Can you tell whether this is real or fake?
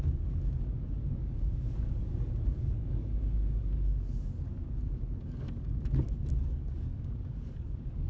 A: fake